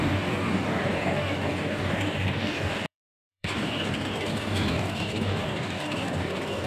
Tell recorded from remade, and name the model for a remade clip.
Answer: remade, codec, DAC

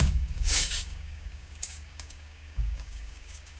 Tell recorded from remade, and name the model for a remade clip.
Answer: remade, codec, DAC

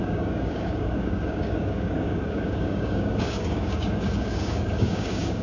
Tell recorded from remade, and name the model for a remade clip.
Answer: remade, codec, DAC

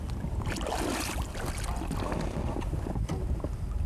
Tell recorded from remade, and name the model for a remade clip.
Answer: recorded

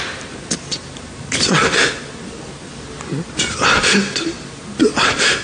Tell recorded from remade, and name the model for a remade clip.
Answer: recorded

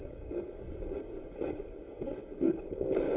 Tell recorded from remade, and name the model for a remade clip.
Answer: remade, codec, DAC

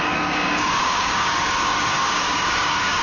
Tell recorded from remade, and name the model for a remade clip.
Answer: remade, codec, DAC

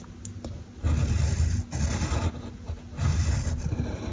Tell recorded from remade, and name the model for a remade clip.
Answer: recorded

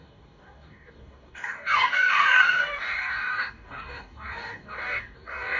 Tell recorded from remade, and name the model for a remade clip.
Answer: remade, codec, DAC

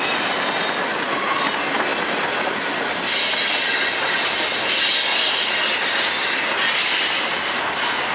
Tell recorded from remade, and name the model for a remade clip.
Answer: recorded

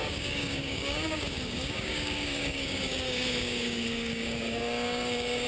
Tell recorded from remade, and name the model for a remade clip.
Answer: remade, codec, DAC